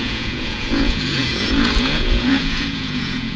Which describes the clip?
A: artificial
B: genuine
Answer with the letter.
A